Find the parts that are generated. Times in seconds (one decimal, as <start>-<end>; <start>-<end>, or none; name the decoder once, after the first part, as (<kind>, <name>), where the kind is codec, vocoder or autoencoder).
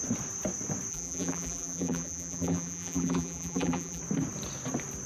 0.9-4.0 (vocoder, BigVGAN v2)